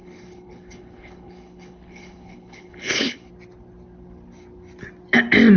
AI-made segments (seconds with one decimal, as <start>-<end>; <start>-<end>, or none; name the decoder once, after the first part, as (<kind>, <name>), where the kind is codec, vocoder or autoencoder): 0.0-3.3 (codec, HILCodec)